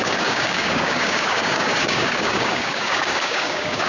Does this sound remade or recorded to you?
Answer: remade